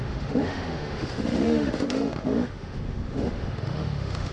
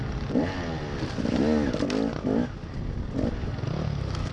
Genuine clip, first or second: second